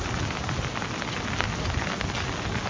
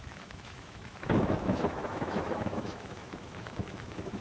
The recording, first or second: first